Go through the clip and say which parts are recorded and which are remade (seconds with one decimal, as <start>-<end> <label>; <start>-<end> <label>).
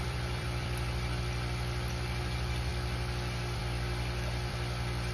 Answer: 0.0-2.7 remade; 2.7-3.6 recorded; 3.6-5.1 remade